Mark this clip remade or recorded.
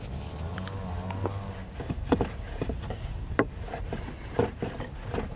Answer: recorded